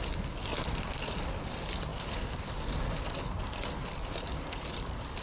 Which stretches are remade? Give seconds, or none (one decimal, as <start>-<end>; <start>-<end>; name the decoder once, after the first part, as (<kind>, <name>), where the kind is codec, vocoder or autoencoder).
1.9-5.2 (vocoder, BigVGAN v2)